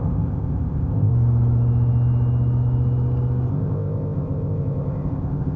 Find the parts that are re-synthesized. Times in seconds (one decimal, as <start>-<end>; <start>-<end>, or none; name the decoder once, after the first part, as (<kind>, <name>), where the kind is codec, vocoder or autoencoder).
0.0-1.1 (codec, ZipCodec); 3.5-5.6